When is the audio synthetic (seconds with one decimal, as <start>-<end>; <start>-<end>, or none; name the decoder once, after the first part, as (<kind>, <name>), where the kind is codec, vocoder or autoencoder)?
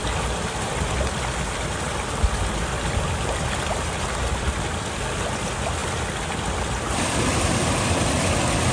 none